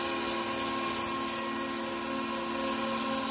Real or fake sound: real